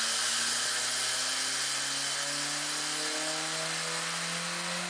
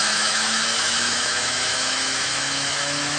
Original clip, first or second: first